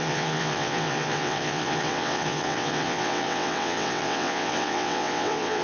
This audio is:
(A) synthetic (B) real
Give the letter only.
A